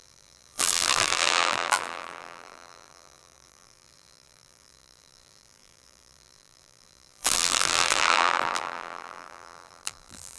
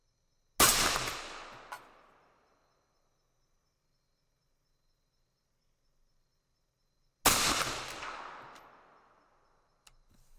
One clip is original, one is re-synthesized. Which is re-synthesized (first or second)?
first